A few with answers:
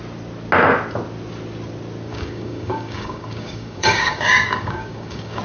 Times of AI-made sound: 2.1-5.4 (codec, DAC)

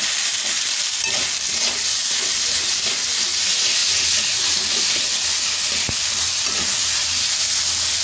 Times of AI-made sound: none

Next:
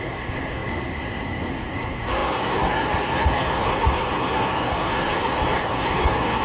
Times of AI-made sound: 0.0-6.4 (codec, SNAC)